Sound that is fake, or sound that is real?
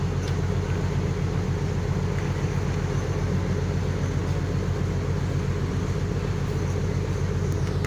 real